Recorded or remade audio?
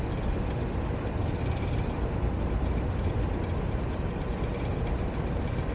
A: recorded